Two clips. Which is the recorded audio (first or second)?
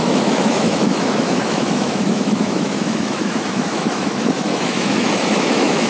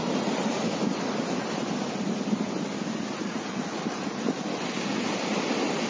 second